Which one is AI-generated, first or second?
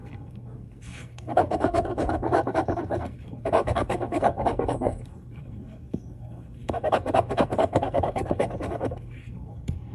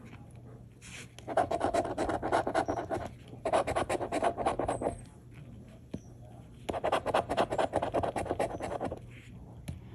first